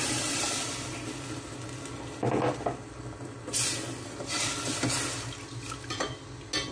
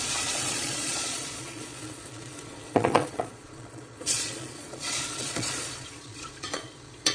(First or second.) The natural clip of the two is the first